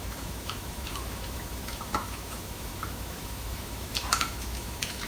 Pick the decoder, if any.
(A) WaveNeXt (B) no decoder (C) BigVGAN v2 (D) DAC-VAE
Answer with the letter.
D